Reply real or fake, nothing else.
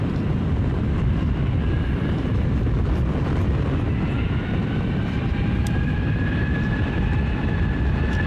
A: real